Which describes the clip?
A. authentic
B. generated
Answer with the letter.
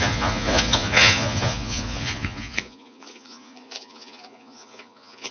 B